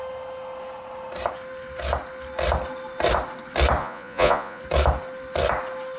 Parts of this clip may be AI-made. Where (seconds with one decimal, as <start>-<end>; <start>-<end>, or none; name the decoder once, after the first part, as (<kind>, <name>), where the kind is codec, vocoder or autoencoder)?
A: 3.8-4.6 (vocoder, Vocos)